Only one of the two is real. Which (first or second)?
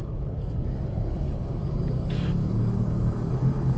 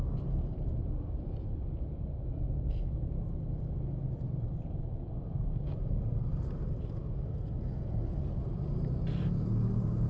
second